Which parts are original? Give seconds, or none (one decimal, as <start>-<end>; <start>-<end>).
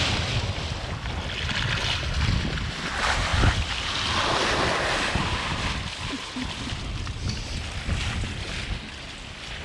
0.0-9.6